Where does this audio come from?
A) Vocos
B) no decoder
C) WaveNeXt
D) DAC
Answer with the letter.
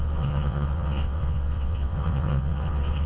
C